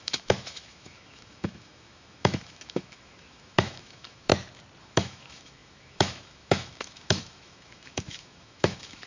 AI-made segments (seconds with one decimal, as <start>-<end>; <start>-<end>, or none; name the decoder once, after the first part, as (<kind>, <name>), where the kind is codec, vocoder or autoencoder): 0.0-4.3 (autoencoder, DAC-VAE); 4.8-9.1